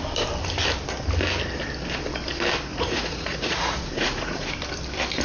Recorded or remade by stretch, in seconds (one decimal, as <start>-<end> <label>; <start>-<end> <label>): 0.0-2.7 recorded; 2.7-4.5 remade; 4.5-5.2 recorded